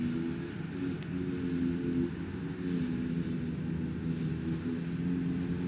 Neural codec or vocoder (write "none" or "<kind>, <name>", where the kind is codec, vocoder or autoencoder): none